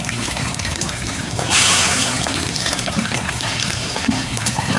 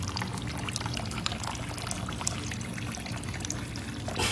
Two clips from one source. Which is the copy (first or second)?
first